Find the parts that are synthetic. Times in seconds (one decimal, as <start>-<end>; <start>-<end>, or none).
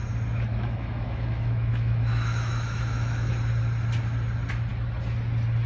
0.5-3.3